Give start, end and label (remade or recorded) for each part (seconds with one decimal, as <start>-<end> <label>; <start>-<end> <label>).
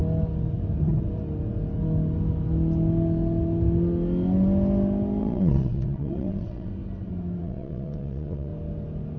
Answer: 0.0-5.2 recorded; 5.2-6.7 remade; 6.7-7.4 recorded; 7.4-8.5 remade; 8.5-9.2 recorded